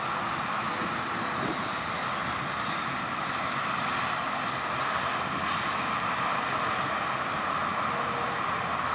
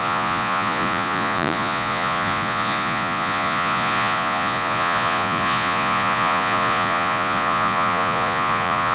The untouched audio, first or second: first